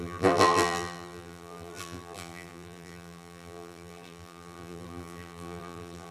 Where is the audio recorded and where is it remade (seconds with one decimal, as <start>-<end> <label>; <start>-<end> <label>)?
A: 0.0-6.1 remade